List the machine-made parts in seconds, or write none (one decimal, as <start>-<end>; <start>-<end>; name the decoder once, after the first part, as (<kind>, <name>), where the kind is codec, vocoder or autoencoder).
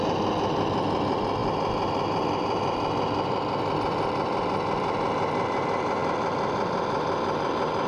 none